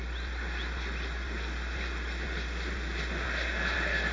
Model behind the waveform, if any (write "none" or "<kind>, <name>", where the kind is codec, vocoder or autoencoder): none